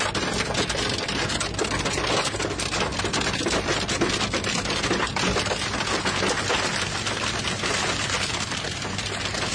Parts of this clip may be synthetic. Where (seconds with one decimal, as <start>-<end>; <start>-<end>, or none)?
none